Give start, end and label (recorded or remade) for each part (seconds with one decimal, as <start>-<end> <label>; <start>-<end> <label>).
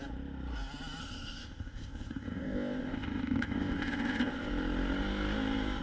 0.0-1.0 recorded; 1.0-4.5 remade; 4.5-5.8 recorded